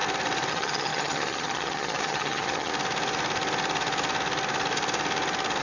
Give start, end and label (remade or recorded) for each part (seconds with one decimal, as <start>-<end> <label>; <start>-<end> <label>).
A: 0.0-0.5 recorded; 0.5-2.7 remade; 2.7-5.6 recorded